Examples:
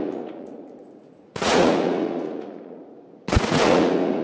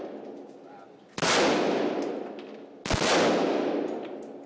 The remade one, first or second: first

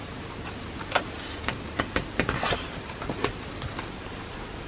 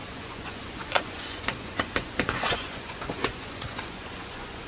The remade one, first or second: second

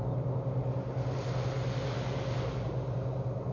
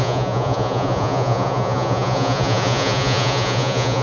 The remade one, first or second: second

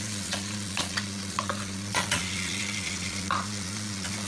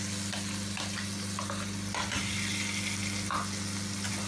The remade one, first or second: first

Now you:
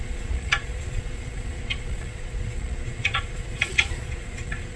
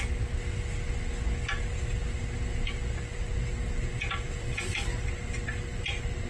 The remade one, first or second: first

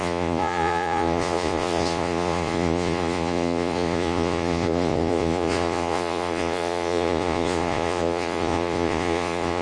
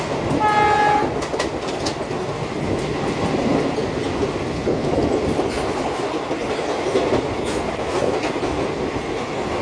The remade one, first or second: first